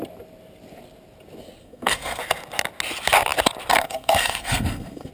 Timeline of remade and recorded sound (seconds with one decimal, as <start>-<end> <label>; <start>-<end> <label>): 0.0-1.6 recorded; 1.6-2.2 remade; 2.2-3.7 recorded; 3.7-5.1 remade